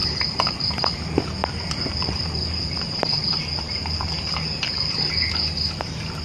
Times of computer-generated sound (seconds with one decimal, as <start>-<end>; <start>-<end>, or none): 0.0-0.7; 1.4-5.1